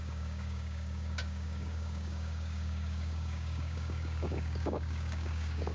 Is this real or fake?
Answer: fake